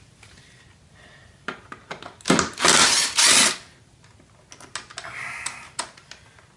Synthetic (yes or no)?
no